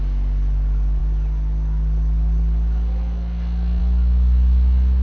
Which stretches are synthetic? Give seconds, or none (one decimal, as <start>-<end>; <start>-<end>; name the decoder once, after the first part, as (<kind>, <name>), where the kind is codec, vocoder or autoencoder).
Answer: none